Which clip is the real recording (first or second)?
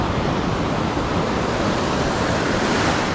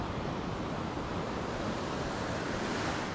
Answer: second